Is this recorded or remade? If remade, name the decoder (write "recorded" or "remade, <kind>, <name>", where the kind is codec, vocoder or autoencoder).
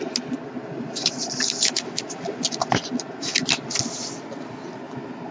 recorded